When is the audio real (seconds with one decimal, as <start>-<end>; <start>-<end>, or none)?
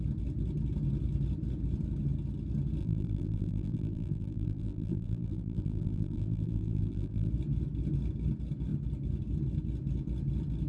0.0-2.8; 7.3-10.7